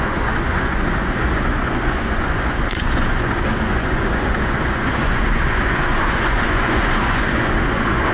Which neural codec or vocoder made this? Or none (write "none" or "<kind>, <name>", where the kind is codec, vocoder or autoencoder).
vocoder, Vocos